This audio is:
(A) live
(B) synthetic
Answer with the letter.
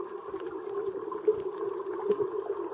A